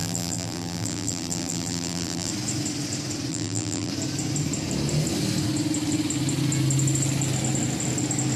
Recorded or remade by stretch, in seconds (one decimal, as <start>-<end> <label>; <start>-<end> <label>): 0.0-2.3 remade; 2.3-3.3 recorded; 3.3-3.9 remade; 3.9-8.4 recorded